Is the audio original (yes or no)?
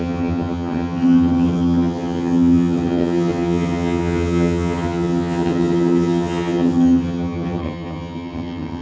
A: no